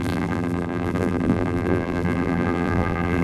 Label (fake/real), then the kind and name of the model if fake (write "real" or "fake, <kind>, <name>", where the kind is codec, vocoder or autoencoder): fake, vocoder, BigVGAN v2